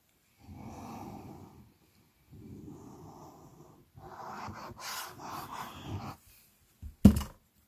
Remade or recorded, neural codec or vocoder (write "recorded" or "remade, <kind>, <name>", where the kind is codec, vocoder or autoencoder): recorded